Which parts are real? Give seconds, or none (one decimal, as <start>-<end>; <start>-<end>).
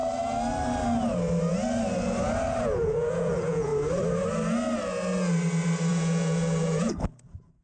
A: 0.0-2.6; 3.7-5.9